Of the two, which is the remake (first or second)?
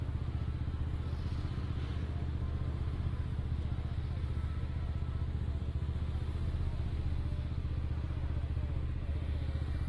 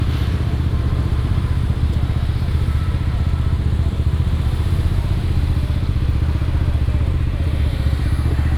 second